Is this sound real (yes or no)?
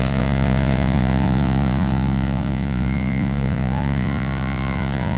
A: no